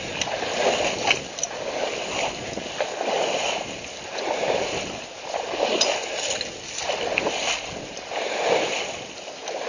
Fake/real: real